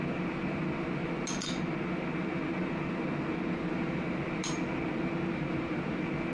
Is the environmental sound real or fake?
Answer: real